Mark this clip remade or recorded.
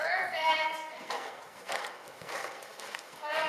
remade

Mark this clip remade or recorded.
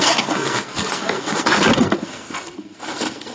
remade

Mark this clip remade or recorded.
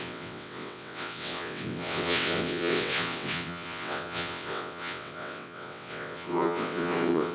remade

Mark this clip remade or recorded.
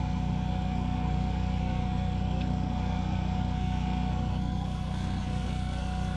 remade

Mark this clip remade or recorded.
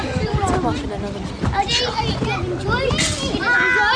recorded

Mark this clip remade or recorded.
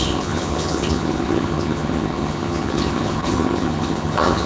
remade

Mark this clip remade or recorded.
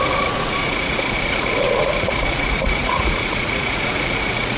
remade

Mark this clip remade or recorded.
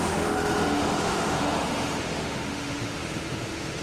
remade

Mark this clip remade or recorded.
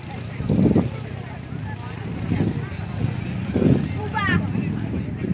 remade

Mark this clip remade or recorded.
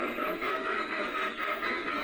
remade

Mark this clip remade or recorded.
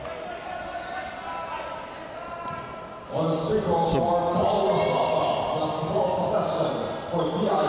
recorded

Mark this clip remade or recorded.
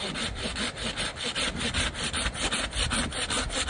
recorded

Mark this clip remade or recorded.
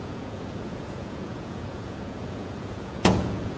remade